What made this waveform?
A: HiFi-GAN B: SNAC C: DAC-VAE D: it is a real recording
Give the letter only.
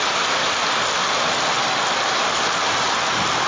D